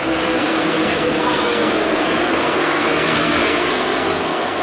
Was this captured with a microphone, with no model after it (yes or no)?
no